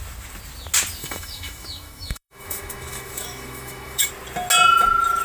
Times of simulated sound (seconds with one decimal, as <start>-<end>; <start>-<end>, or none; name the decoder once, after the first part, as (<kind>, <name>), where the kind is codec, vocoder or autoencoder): 1.0-4.1 (autoencoder, DAC-VAE)